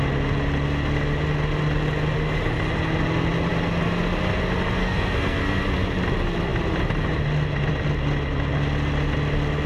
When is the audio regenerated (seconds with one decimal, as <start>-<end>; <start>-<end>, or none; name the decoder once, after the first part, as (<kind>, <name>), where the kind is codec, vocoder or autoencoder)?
4.8-5.4 (codec, SNAC)